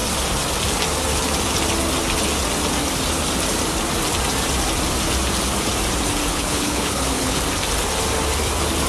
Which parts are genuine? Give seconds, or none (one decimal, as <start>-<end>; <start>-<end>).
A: 0.0-6.3; 7.4-8.9